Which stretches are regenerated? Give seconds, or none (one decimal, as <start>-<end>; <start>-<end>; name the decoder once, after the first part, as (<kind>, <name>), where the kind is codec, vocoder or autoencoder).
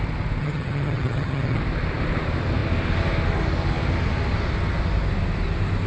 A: 0.4-1.6 (vocoder, HiFi-GAN)